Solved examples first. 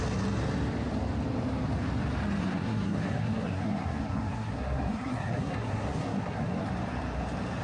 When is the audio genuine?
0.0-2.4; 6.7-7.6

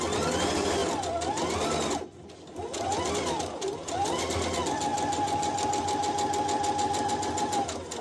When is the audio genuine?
0.0-8.0